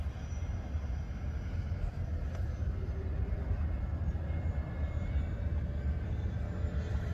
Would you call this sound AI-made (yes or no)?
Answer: no